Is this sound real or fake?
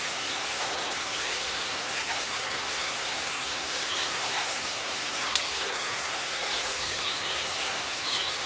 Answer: fake